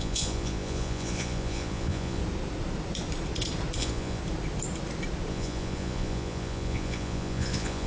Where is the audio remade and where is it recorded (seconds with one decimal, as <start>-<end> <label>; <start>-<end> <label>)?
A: 0.0-2.2 remade; 2.2-3.8 recorded; 3.8-4.2 remade; 4.2-5.3 recorded; 5.3-7.9 remade